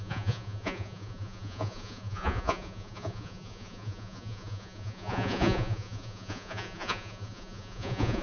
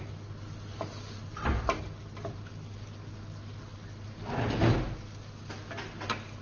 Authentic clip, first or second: second